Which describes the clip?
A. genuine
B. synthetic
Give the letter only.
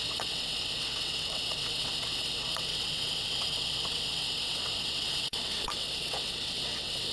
B